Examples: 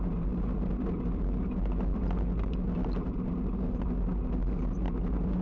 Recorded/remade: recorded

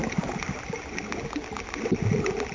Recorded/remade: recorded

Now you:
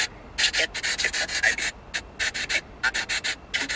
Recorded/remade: recorded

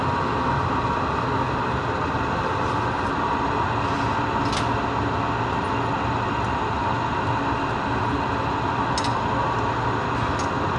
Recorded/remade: recorded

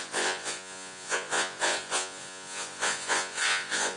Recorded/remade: remade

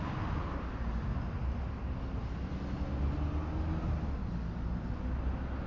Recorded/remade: recorded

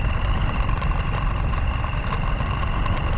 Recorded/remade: recorded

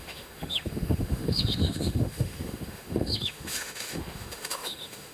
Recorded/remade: remade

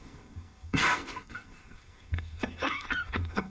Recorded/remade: remade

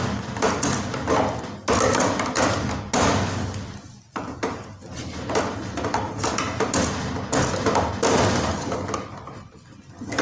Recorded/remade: recorded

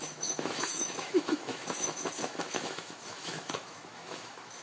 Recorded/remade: remade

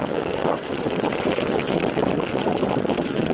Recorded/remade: remade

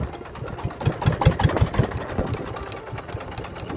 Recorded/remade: recorded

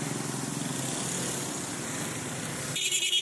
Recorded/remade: recorded